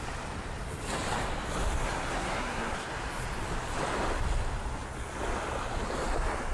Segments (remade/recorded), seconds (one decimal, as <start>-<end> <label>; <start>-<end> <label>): 0.0-2.1 recorded; 2.1-2.9 remade; 2.9-6.5 recorded